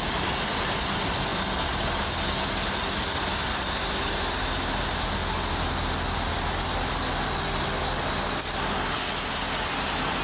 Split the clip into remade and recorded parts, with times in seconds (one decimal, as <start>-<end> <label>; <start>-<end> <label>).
0.0-10.2 recorded